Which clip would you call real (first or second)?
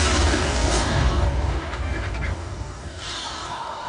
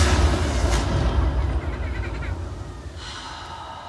second